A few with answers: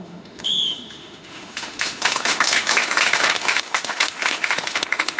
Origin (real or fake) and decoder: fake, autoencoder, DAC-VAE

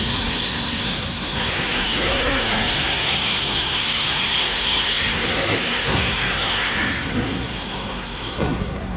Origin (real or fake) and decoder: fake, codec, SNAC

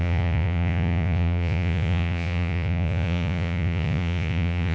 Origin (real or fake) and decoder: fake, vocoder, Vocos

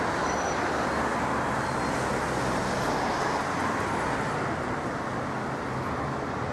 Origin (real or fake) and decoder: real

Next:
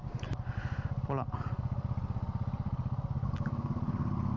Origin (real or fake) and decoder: real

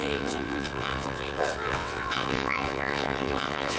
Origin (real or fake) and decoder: fake, vocoder, WaveNeXt